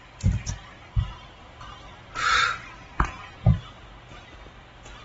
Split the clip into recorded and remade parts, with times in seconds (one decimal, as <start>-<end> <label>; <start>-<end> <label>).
0.0-1.4 recorded; 1.4-3.5 remade; 3.5-5.0 recorded

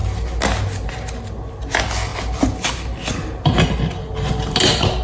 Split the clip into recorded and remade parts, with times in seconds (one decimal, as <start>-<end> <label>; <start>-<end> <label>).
0.0-5.0 recorded

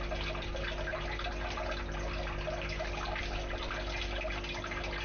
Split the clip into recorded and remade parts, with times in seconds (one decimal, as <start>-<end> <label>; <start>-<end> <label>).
0.0-5.0 recorded

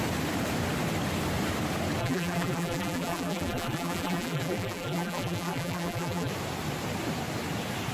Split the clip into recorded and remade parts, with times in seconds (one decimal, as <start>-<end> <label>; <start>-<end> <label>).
0.0-2.0 recorded; 2.0-6.3 remade; 6.3-7.9 recorded

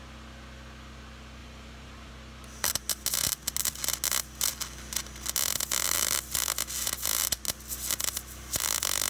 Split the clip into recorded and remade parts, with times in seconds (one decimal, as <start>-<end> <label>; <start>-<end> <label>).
0.0-1.4 recorded; 1.4-2.1 remade; 2.1-9.1 recorded

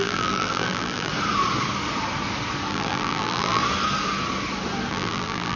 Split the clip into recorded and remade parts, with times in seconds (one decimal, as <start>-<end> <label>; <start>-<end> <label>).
0.0-1.1 remade; 1.1-2.7 recorded; 2.7-3.6 remade; 3.6-4.9 recorded; 4.9-5.6 remade

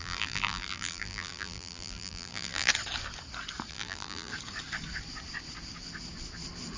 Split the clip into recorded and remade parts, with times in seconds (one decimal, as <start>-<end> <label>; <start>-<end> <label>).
0.0-2.7 remade; 2.7-3.7 recorded; 3.7-4.3 remade; 4.3-6.8 recorded

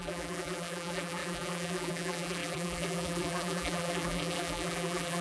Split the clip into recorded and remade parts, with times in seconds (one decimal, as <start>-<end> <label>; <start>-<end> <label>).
0.0-5.2 remade